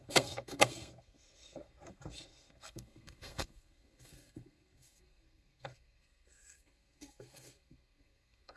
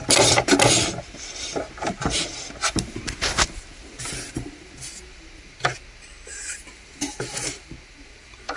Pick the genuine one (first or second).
second